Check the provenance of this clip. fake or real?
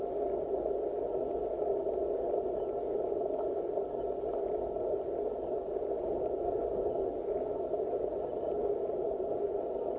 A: real